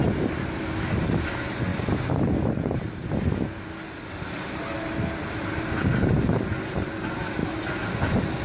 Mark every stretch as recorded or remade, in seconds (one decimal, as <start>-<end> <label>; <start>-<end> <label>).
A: 0.0-8.4 recorded